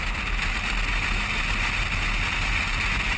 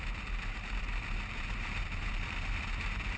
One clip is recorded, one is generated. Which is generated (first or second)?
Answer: second